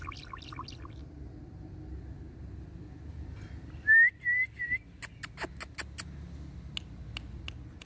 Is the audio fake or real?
real